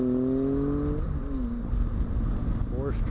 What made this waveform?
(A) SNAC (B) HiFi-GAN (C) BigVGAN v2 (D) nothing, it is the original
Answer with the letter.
D